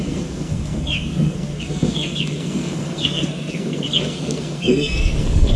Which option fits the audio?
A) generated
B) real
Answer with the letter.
A